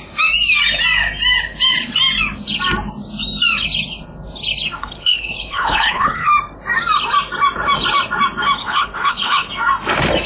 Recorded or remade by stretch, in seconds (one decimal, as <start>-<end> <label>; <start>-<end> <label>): 0.0-4.8 recorded; 4.8-6.3 remade; 6.3-8.6 recorded; 8.6-9.5 remade; 9.5-10.3 recorded